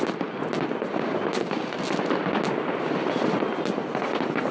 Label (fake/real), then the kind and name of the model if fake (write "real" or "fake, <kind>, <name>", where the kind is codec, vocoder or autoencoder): real